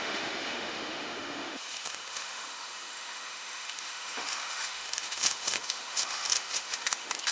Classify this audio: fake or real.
fake